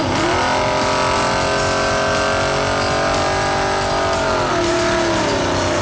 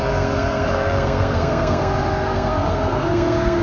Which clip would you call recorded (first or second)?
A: first